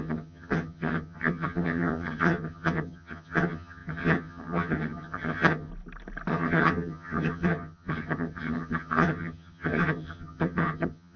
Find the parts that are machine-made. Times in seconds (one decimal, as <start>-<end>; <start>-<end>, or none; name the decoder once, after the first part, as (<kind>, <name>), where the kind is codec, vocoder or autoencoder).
0.0-5.7 (vocoder, HiFi-GAN); 6.3-11.2